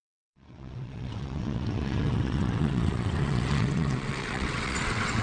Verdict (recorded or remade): remade